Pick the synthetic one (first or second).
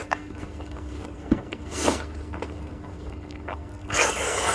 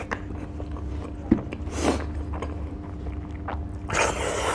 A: first